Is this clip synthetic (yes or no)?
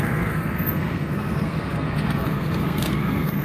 yes